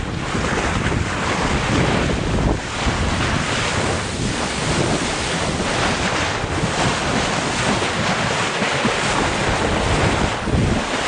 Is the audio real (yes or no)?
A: yes